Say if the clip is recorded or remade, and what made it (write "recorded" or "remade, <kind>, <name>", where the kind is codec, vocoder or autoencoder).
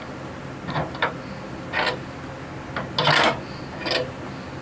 recorded